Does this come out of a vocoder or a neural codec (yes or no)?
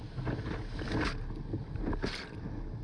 no